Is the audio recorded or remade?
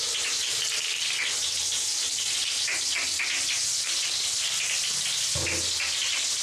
recorded